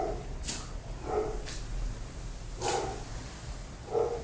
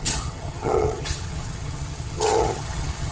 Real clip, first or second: first